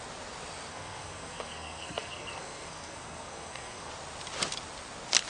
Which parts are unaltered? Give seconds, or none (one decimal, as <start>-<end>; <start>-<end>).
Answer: 0.0-0.7; 3.9-5.3